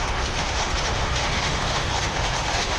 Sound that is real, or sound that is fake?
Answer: fake